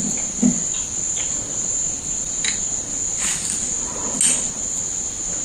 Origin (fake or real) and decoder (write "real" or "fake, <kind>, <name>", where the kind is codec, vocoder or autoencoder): real